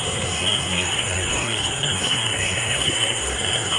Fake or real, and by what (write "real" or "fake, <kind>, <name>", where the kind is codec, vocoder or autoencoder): fake, codec, SNAC